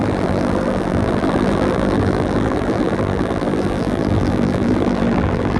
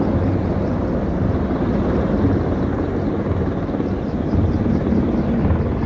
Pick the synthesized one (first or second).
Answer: first